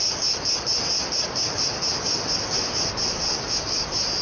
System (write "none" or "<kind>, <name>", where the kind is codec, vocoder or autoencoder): none